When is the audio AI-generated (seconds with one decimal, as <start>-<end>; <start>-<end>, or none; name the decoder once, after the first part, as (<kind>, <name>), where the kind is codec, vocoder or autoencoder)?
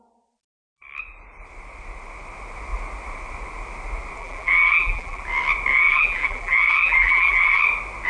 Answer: 4.2-5.2 (vocoder, BigVGAN v2); 5.7-7.6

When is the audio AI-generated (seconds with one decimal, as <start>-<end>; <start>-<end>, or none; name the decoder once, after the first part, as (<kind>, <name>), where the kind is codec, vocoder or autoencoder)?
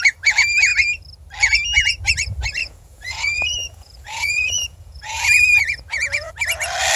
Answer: 2.6-6.3 (vocoder, Vocos)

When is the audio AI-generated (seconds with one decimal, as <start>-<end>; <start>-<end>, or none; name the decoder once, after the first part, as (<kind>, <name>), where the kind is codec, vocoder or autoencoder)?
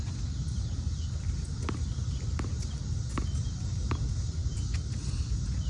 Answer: 4.4-5.7 (vocoder, BigVGAN v2)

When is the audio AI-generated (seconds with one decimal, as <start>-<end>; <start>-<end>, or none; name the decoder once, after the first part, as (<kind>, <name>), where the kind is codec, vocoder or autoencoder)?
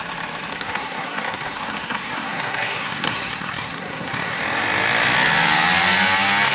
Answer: 0.5-4.4 (codec, SNAC)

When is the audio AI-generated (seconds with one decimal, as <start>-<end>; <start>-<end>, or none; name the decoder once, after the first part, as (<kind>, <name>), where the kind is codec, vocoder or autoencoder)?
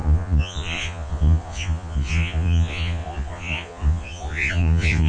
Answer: 0.0-5.1 (vocoder, Vocos)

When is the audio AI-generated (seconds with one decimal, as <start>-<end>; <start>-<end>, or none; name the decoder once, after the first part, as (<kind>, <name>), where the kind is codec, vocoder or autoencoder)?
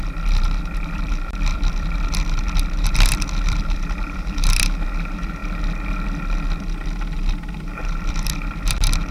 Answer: 0.0-5.4 (vocoder, BigVGAN v2); 8.0-9.1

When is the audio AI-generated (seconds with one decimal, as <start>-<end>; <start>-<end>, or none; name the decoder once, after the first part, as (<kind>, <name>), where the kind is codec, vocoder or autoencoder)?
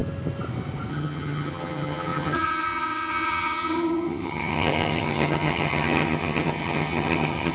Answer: 0.9-7.5 (vocoder, HiFi-GAN)